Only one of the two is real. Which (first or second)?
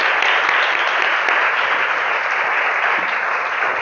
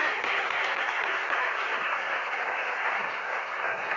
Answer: first